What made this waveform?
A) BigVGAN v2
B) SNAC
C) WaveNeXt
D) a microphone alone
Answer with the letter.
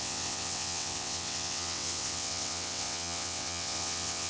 C